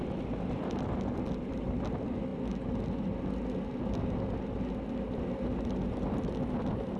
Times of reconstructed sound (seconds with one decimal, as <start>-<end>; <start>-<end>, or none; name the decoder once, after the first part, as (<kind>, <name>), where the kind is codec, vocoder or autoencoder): none